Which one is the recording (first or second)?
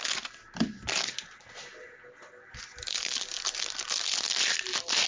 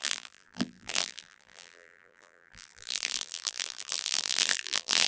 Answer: first